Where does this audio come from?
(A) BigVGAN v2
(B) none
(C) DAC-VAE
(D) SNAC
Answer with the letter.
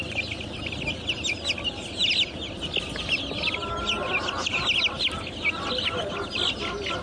B